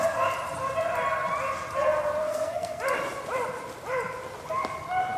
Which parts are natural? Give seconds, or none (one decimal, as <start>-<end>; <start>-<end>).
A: 0.0-2.2; 2.8-5.2